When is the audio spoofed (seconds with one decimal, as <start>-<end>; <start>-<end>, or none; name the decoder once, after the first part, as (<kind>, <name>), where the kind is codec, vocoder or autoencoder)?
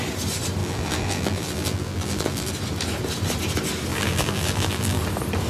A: 0.6-2.5 (vocoder, BigVGAN v2); 3.9-5.0